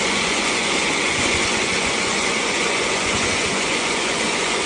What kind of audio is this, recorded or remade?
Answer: remade